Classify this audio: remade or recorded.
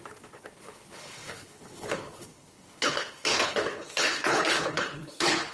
remade